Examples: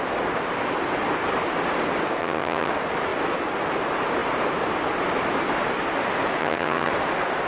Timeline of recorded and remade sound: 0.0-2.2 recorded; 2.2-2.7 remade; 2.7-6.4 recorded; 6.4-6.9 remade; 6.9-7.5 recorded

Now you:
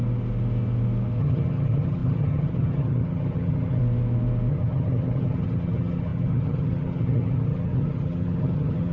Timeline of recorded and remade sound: 0.0-1.2 recorded; 1.2-3.8 remade; 3.8-4.5 recorded; 4.5-8.9 remade

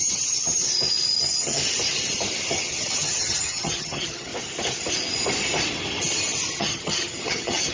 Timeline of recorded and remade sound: 0.0-0.6 remade; 0.6-1.2 recorded; 1.2-1.6 remade; 1.6-2.5 recorded; 2.5-4.3 remade; 4.3-6.6 recorded; 6.6-7.7 remade

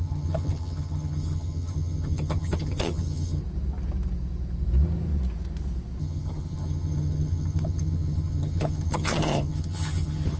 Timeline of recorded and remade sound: 0.0-3.4 remade; 3.4-6.0 recorded; 6.0-10.4 remade

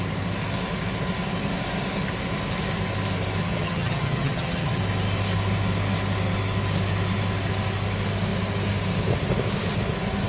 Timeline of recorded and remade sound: 0.0-3.4 recorded; 3.4-4.8 remade; 4.8-10.3 recorded

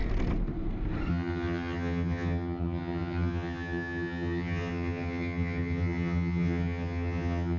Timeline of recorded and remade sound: 0.0-1.1 recorded; 1.1-7.6 remade

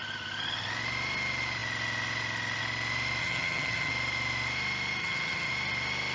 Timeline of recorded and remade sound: 0.0-3.2 recorded; 3.2-3.9 remade; 3.9-5.0 recorded; 5.0-5.5 remade; 5.5-6.1 recorded